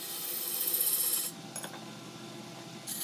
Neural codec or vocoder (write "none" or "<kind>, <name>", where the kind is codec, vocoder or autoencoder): none